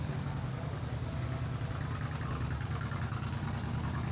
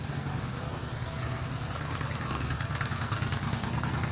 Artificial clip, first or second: second